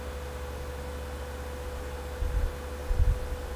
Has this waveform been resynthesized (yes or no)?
no